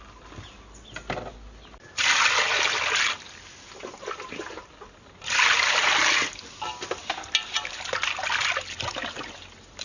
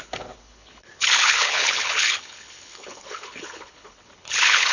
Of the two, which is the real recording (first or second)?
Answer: first